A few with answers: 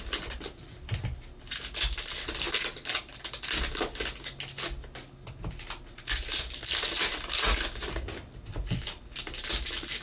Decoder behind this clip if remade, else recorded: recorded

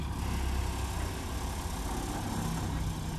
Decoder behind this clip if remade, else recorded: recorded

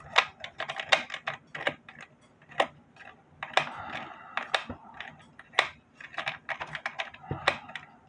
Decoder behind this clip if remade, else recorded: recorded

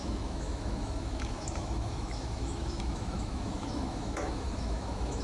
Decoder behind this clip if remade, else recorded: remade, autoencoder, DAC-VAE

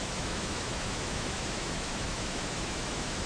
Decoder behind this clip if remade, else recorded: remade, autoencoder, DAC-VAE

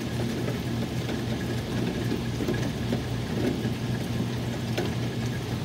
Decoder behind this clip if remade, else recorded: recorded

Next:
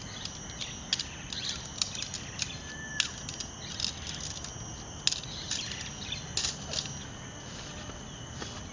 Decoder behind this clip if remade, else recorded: recorded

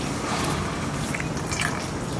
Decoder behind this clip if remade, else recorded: recorded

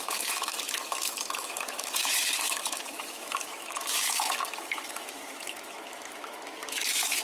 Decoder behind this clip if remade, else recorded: remade, autoencoder, DAC-VAE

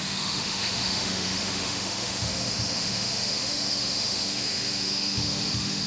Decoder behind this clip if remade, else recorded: remade, autoencoder, DAC-VAE